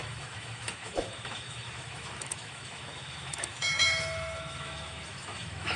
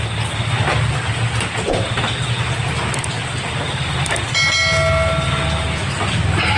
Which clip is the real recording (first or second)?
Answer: second